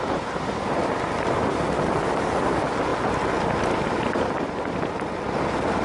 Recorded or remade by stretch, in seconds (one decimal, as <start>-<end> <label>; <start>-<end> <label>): 0.0-5.8 recorded